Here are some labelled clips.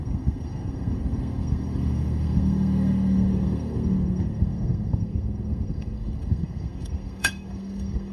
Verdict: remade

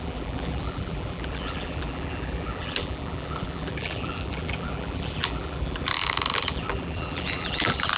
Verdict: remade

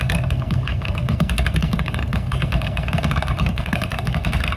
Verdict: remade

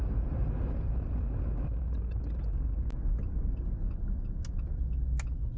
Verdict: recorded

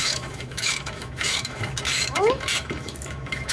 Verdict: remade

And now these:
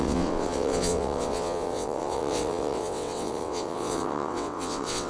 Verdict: remade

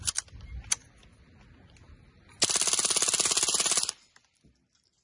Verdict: recorded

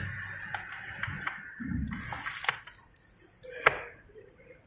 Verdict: recorded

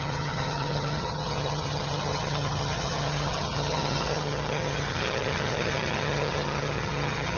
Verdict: remade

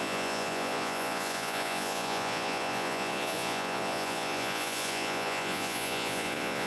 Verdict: remade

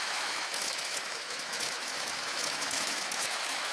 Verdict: remade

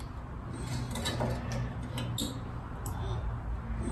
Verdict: recorded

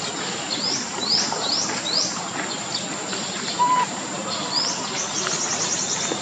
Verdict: recorded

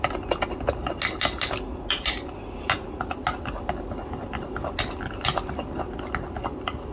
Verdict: recorded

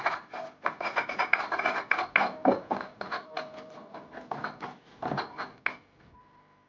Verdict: recorded